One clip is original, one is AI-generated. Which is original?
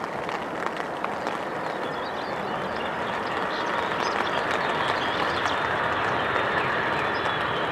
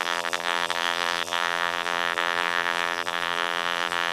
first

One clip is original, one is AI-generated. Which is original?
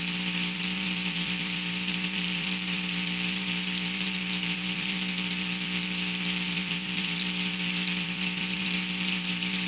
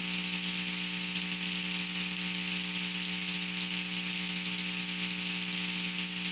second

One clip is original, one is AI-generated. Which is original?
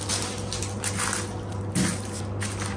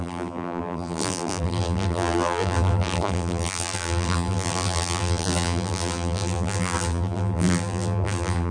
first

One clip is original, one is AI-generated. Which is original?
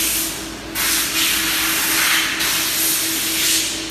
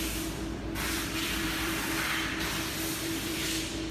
first